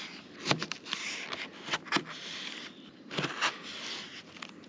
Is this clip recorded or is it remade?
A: recorded